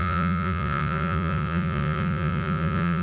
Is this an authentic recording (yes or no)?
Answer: no